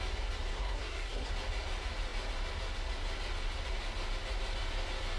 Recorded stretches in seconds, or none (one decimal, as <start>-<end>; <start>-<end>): 0.0-0.5; 1.3-5.2